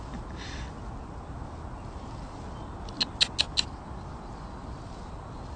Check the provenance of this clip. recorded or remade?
recorded